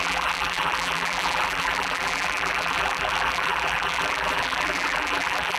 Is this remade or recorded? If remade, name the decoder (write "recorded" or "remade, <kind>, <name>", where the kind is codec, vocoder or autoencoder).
remade, vocoder, BigVGAN v2